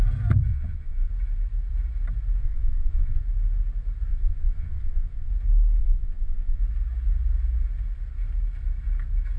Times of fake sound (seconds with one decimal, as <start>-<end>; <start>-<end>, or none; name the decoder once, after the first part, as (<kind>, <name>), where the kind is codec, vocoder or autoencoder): 0.5-1.1 (vocoder, Vocos); 2.4-3.2; 4.1-5.3; 5.8-6.6